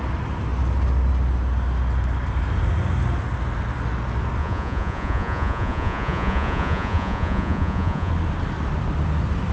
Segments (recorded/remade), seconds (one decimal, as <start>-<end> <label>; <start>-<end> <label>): 0.0-4.4 recorded; 4.4-8.1 remade; 8.1-9.5 recorded